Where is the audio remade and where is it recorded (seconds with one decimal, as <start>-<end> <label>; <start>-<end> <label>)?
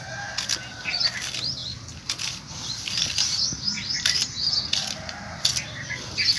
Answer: 0.0-1.6 recorded; 1.6-5.4 remade; 5.4-6.4 recorded